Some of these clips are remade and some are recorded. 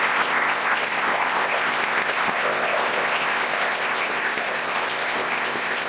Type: remade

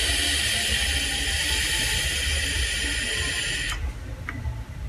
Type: recorded